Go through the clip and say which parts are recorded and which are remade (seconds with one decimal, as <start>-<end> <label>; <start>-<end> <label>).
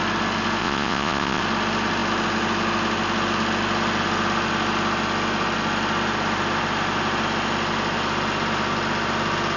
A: 0.0-0.6 recorded; 0.6-1.4 remade; 1.4-9.6 recorded